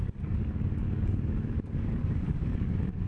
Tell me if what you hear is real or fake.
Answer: fake